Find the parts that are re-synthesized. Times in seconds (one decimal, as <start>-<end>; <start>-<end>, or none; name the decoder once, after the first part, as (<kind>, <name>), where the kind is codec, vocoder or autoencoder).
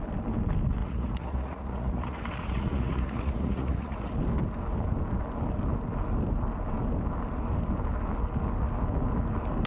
0.8-4.1 (vocoder, Vocos)